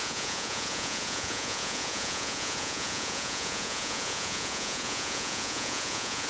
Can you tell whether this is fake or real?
fake